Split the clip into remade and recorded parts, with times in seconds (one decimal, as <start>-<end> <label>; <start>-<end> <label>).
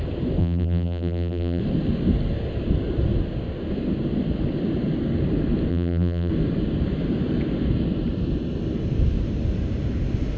0.0-0.4 recorded; 0.4-1.6 remade; 1.6-5.7 recorded; 5.7-6.3 remade; 6.3-10.4 recorded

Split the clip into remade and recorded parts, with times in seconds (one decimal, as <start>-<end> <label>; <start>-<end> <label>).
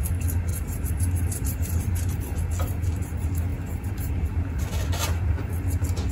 0.0-0.5 recorded; 0.5-2.1 remade; 2.1-6.1 recorded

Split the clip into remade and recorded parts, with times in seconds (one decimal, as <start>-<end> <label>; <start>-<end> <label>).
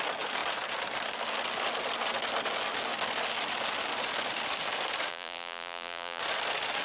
0.0-5.1 recorded; 5.1-6.2 remade; 6.2-6.8 recorded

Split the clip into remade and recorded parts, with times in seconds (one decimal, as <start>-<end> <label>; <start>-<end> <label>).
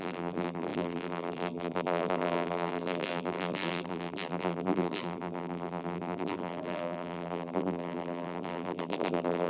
0.0-9.5 remade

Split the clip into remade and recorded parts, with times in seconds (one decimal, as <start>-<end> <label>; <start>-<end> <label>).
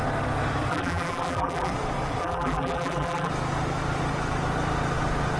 0.0-0.7 recorded; 0.7-1.7 remade; 1.7-2.2 recorded; 2.2-3.3 remade; 3.3-5.4 recorded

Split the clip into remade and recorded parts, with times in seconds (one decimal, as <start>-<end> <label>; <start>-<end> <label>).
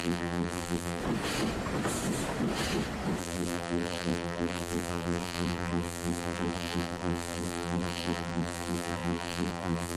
0.0-1.0 remade; 1.0-3.2 recorded; 3.2-10.0 remade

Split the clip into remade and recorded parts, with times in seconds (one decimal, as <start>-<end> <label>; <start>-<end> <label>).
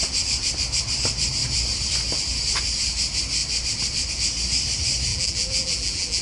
0.0-5.1 recorded; 5.1-6.2 remade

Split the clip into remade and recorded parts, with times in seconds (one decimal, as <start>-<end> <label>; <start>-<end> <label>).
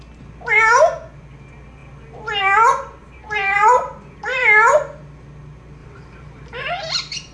0.0-3.0 recorded; 3.0-4.4 remade; 4.4-5.8 recorded; 5.8-6.7 remade; 6.7-7.3 recorded